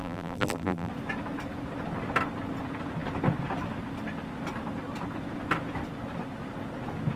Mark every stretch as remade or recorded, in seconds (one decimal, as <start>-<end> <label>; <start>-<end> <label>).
0.0-0.9 remade; 0.9-7.2 recorded